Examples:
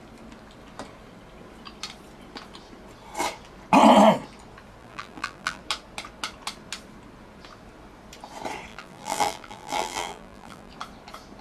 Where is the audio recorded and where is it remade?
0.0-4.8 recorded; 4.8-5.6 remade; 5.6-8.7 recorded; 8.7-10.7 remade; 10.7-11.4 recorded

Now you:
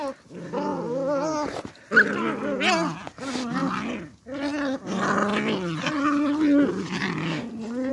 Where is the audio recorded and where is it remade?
0.0-7.9 recorded

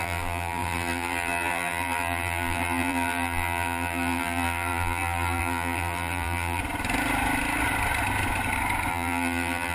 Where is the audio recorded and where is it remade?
0.0-6.6 remade; 6.6-8.9 recorded; 8.9-9.7 remade

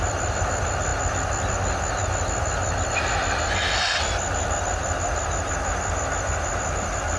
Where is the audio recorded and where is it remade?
0.0-7.2 recorded